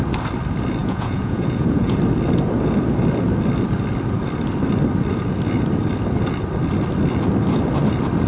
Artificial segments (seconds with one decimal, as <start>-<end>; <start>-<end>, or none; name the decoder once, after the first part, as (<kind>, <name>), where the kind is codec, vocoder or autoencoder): 0.8-2.0 (vocoder, Vocos)